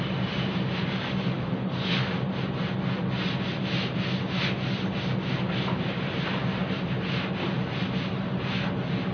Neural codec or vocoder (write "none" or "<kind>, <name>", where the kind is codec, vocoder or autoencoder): none